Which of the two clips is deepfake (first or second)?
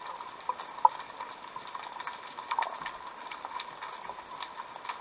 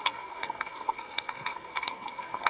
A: second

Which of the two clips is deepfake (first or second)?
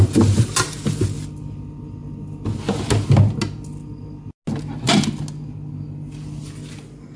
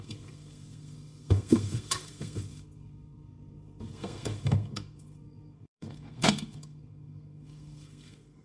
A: second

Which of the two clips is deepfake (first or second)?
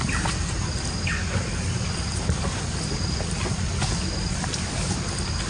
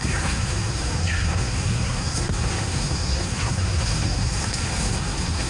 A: second